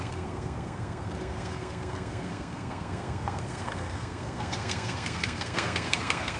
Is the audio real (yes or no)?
no